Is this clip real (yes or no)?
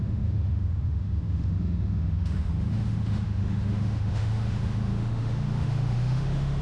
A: no